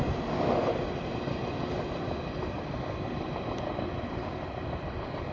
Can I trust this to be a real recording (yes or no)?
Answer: yes